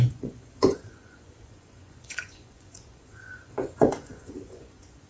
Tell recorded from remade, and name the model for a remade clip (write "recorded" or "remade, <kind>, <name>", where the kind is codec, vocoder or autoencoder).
remade, vocoder, Vocos